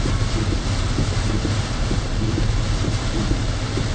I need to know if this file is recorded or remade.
recorded